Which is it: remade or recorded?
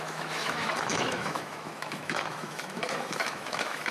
remade